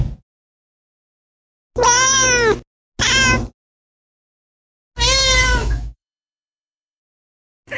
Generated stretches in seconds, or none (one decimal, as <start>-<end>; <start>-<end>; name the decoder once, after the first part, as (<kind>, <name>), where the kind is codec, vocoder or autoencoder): 5.6-7.0 (autoencoder, DAC-VAE)